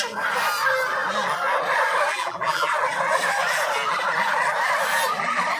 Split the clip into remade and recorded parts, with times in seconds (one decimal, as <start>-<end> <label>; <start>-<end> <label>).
0.0-2.1 recorded; 2.1-2.7 remade; 2.7-5.6 recorded